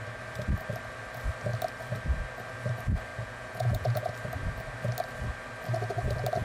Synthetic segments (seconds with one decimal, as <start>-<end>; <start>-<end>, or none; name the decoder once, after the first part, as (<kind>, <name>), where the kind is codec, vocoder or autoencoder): 3.1-4.1 (vocoder, Vocos)